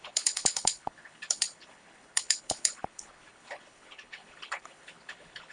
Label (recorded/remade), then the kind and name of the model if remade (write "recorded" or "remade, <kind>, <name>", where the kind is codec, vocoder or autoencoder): remade, codec, HILCodec